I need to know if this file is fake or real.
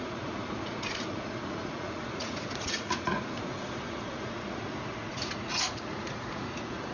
fake